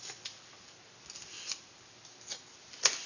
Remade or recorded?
recorded